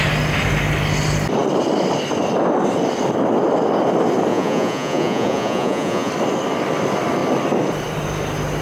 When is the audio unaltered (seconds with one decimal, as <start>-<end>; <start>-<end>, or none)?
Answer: 0.0-4.3; 6.1-8.6